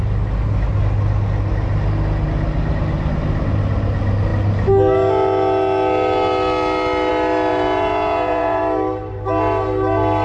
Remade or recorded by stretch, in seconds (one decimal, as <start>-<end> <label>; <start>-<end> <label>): 0.0-7.5 recorded; 7.5-8.6 remade; 8.6-10.2 recorded